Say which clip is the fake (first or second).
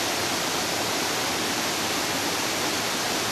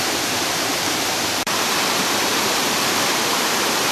second